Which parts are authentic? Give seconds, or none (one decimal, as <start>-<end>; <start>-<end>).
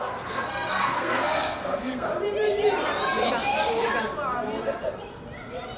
2.1-5.8